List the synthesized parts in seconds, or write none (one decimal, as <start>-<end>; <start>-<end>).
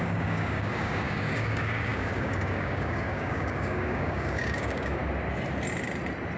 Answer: 0.0-5.0